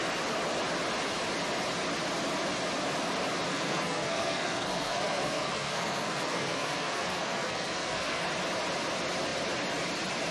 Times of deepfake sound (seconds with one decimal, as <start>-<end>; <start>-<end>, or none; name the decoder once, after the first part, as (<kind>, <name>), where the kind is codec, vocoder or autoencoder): 3.5-8.2 (codec, SNAC)